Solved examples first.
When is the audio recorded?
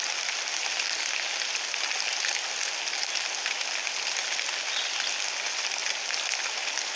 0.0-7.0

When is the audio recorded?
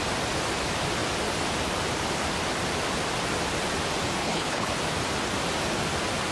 0.0-4.2; 4.7-6.3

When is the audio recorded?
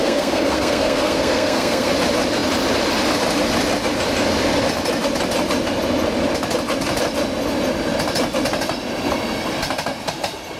1.9-10.6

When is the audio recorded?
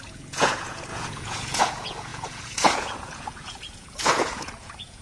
none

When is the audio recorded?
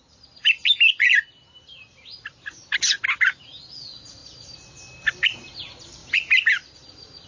0.0-6.0; 6.7-7.3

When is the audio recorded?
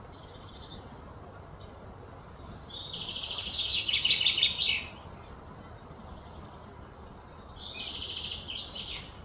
0.0-3.4; 4.2-9.2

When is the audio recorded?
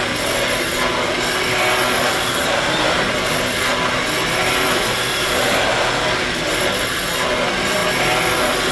0.0-2.4; 3.5-5.1; 5.7-8.7